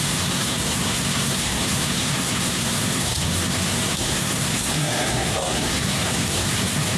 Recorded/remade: remade